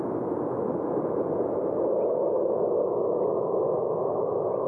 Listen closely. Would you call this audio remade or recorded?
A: recorded